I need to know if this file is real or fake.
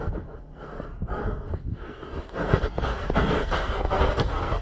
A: fake